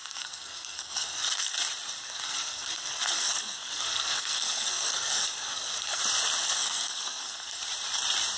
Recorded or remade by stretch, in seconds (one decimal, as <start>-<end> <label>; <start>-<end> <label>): 0.0-1.5 remade; 1.5-2.0 recorded; 2.0-6.0 remade; 6.0-6.4 recorded; 6.4-7.6 remade; 7.6-8.4 recorded